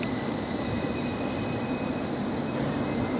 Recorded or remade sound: recorded